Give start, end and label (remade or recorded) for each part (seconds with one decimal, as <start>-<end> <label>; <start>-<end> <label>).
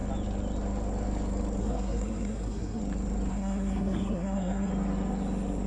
0.0-1.6 recorded; 1.6-2.8 remade; 2.8-3.3 recorded; 3.3-4.7 remade; 4.7-5.7 recorded